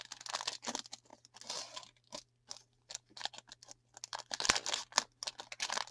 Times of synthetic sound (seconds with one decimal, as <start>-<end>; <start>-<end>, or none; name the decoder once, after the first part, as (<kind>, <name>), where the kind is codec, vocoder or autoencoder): none